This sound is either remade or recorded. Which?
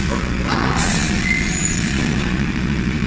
remade